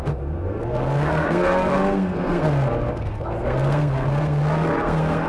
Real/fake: fake